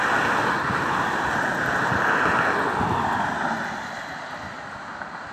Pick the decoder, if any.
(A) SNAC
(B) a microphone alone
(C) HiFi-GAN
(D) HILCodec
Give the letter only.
B